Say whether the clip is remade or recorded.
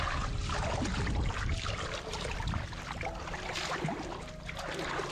recorded